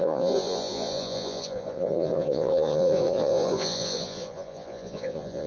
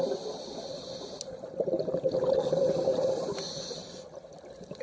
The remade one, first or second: first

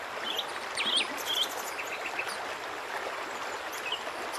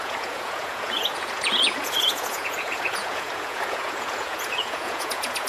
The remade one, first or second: second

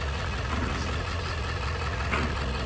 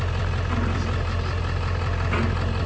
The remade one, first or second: first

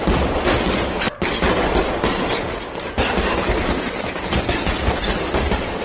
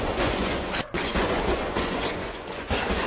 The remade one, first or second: second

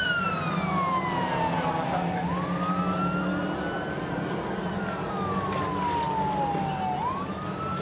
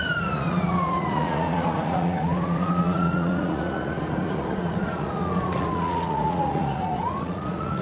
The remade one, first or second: second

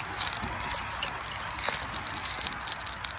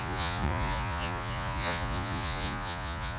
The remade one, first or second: second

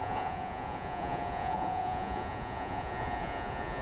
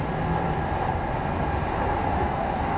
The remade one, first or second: first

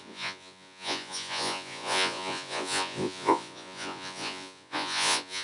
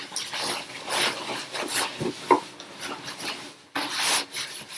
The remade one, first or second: first